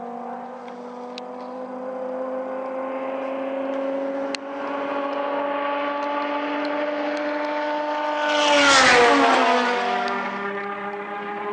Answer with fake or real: real